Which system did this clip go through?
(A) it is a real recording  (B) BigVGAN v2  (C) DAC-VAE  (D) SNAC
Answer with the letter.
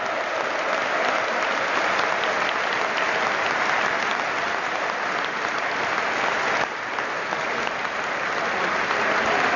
A